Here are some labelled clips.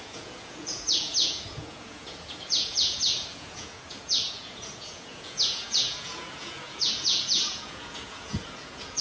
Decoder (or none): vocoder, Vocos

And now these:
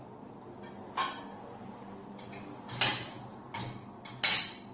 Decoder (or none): none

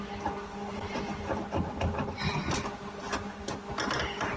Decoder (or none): none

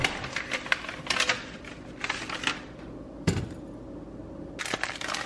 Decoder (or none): none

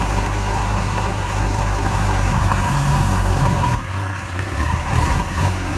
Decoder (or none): codec, SNAC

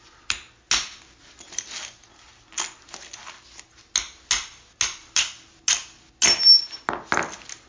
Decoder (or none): none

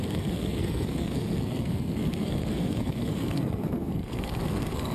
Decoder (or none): codec, SNAC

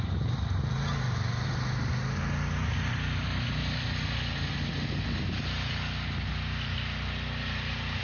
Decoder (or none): none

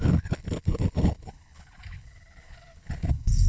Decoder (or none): codec, HILCodec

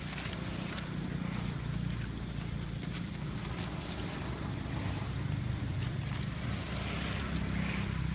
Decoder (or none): none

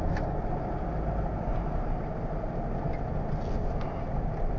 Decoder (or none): none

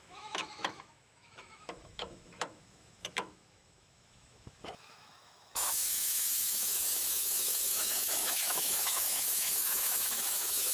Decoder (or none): autoencoder, DAC-VAE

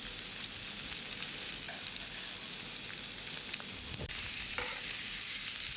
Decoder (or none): none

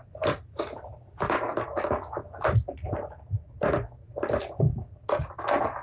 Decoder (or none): none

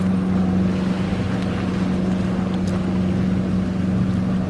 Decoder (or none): none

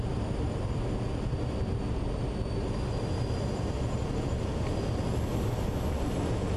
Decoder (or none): none